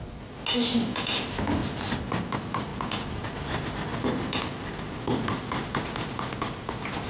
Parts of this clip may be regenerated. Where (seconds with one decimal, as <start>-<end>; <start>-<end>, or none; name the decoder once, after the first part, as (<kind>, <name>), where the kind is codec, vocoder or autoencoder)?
1.6-2.2 (vocoder, BigVGAN v2)